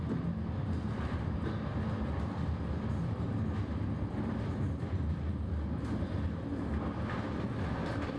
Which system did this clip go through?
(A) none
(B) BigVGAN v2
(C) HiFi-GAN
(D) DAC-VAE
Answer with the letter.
A